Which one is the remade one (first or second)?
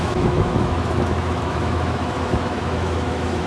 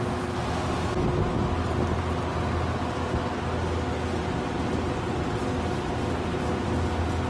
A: first